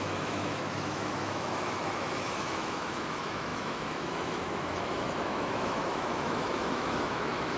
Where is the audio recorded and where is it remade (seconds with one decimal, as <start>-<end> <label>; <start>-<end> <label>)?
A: 0.0-7.6 remade